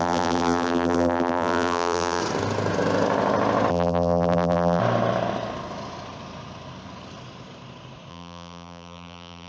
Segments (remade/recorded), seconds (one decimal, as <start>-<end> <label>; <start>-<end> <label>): 0.0-2.2 remade; 2.2-3.7 recorded; 3.7-4.8 remade; 4.8-8.1 recorded; 8.1-9.5 remade